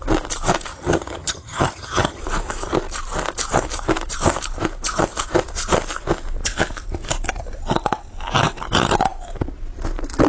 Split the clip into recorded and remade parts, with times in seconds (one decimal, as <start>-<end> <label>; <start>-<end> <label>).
0.0-0.7 recorded; 0.7-2.2 remade; 2.2-10.3 recorded